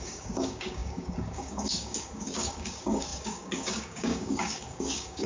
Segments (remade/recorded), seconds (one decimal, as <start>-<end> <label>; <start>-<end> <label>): 0.0-5.3 remade